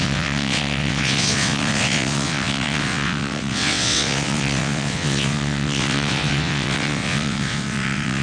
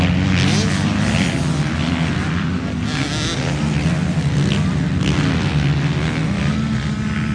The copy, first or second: first